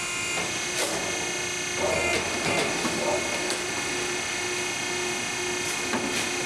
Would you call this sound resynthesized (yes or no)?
no